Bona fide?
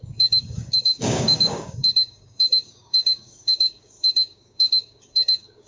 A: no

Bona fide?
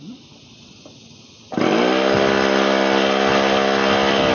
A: yes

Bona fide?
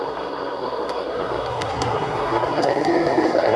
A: no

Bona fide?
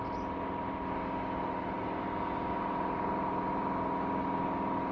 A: yes